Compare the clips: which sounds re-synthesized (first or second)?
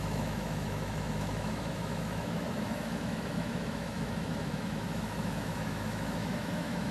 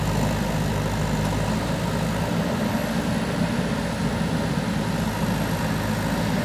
first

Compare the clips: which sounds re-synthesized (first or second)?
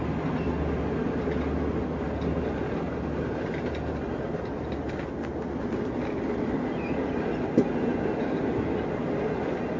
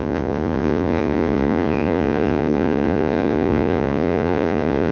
second